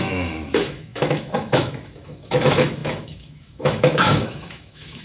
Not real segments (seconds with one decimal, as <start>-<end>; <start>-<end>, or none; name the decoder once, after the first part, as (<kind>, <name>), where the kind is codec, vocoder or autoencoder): 0.0-5.0 (autoencoder, DAC-VAE)